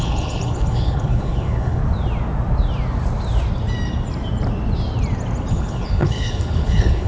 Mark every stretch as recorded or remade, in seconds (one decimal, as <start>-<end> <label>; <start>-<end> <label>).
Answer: 0.0-1.8 remade; 1.8-5.5 recorded; 5.5-7.1 remade